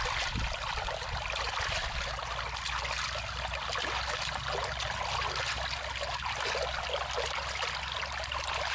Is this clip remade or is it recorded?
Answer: recorded